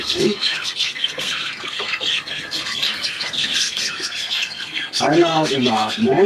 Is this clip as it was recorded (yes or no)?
no